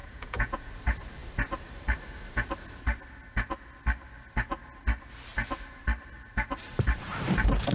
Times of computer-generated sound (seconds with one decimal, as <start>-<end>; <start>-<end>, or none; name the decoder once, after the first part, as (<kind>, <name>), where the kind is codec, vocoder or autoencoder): 0.0-0.7 (vocoder, Vocos)